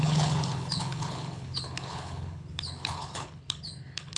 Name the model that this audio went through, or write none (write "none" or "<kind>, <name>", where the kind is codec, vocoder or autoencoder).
codec, HILCodec